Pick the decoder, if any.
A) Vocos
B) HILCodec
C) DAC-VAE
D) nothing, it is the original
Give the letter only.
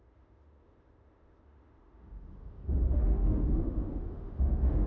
C